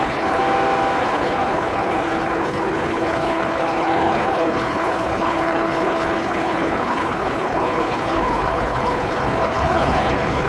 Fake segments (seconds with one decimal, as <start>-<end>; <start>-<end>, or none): 0.0-0.4; 1.0-10.5